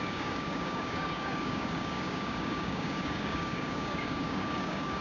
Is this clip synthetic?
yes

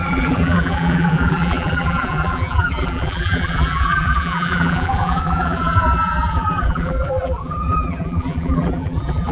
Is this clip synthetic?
yes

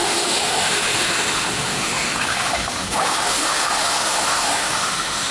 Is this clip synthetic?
yes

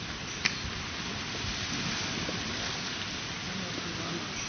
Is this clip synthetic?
no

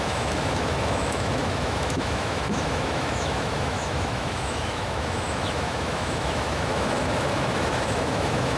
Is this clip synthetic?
yes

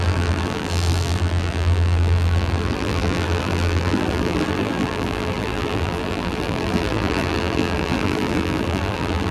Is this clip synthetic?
yes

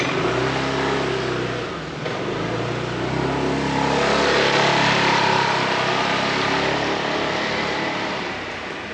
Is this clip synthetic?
no